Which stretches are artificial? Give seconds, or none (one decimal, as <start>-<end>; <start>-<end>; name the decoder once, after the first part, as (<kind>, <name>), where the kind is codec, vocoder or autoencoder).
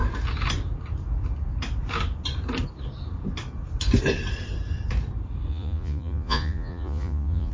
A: 5.5-7.5 (vocoder, Vocos)